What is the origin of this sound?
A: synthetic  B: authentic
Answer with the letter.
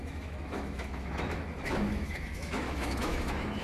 A